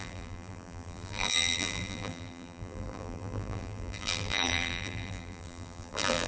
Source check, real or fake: fake